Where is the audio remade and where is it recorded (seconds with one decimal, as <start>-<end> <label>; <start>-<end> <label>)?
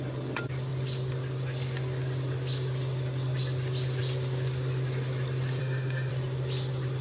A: 0.0-5.6 recorded; 5.6-6.1 remade; 6.1-7.0 recorded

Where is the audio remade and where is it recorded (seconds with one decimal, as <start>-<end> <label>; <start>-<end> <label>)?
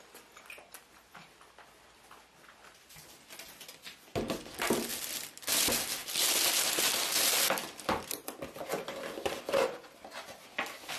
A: 0.0-4.9 recorded; 4.9-5.5 remade; 5.5-6.0 recorded; 6.0-6.6 remade; 6.6-11.0 recorded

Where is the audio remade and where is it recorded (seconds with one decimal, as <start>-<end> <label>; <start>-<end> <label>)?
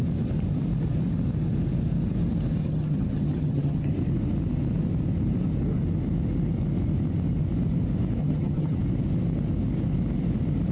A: 0.0-2.6 recorded; 2.6-3.9 remade; 3.9-8.2 recorded; 8.2-8.8 remade; 8.8-10.7 recorded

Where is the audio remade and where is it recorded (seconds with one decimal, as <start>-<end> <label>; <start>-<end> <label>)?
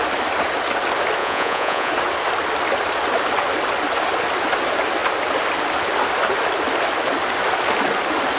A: 0.0-1.2 recorded; 1.2-1.9 remade; 1.9-8.4 recorded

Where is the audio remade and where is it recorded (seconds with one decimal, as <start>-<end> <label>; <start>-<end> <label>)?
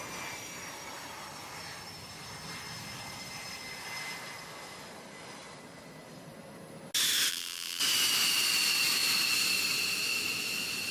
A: 0.0-7.3 recorded; 7.3-7.8 remade; 7.8-10.9 recorded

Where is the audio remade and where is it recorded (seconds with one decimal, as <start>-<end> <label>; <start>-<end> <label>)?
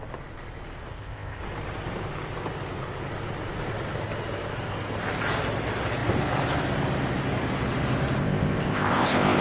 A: 0.0-0.9 recorded; 0.9-1.4 remade; 1.4-8.2 recorded; 8.2-9.4 remade